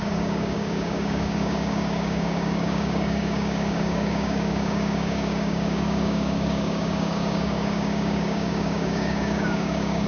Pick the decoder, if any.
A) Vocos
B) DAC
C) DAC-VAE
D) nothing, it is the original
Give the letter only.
B